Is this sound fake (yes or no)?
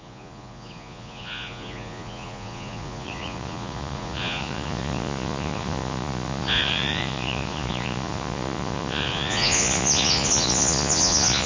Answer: yes